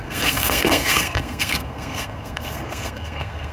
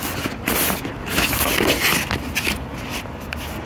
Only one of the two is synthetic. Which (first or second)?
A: first